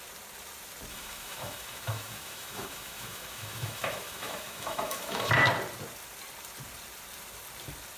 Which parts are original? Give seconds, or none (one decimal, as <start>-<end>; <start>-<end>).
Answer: 0.0-0.9; 5.3-8.0

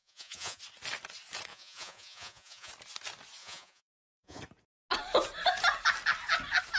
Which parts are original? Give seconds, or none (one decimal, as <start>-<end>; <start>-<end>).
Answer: 0.6-1.5; 2.7-3.4; 4.4-6.8